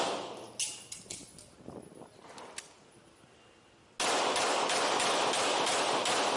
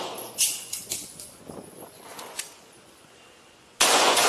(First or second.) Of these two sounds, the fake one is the second